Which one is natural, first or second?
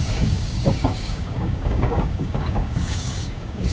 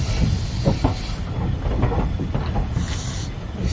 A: second